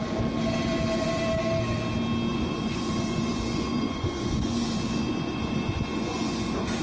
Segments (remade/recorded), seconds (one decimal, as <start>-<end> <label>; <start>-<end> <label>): 0.0-2.3 recorded; 2.3-6.8 remade